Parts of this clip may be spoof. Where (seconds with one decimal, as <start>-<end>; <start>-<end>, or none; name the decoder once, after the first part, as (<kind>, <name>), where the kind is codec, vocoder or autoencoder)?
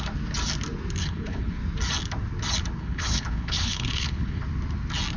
1.0-1.6 (codec, HILCodec); 2.8-4.4